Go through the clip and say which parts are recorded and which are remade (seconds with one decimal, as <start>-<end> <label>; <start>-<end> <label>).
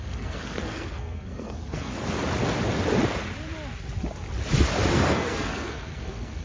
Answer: 0.0-1.9 remade; 1.9-4.9 recorded; 4.9-6.4 remade